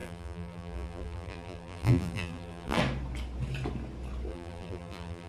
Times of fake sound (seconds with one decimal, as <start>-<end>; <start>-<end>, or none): 0.0-2.8; 4.3-5.3